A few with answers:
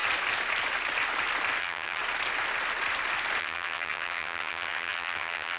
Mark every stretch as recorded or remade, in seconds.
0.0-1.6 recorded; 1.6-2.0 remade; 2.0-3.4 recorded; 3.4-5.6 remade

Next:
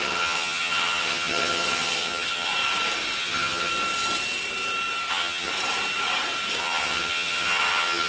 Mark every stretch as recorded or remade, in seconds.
0.0-2.5 remade; 2.5-3.2 recorded; 3.2-3.7 remade; 3.7-5.1 recorded; 5.1-5.5 remade; 5.5-6.6 recorded; 6.6-8.1 remade

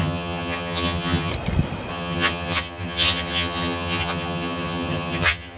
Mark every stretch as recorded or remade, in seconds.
0.0-1.3 remade; 1.3-1.9 recorded; 1.9-5.6 remade

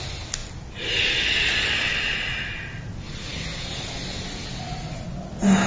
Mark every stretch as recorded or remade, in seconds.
0.0-5.7 recorded

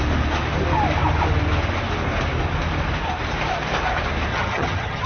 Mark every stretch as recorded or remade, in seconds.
0.0-4.3 recorded; 4.3-5.1 remade

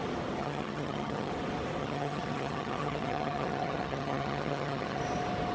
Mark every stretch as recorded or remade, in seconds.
0.0-0.4 recorded; 0.4-1.3 remade; 1.3-1.8 recorded; 1.8-5.0 remade; 5.0-5.5 recorded

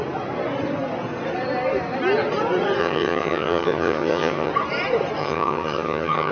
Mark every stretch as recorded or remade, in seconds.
0.0-2.8 recorded; 2.8-4.5 remade; 4.5-5.2 recorded; 5.2-6.3 remade